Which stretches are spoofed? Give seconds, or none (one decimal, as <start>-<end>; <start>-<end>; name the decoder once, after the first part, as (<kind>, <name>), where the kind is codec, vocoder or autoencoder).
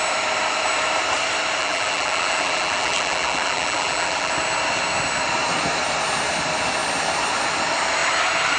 1.6-4.3 (vocoder, BigVGAN v2)